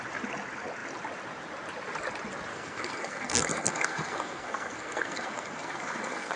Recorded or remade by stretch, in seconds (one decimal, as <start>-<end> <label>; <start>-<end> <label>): 0.0-2.5 recorded; 2.5-6.4 remade